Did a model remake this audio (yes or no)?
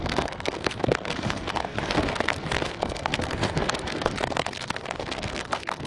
yes